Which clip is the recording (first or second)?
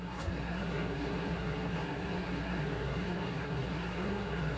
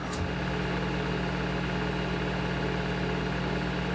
second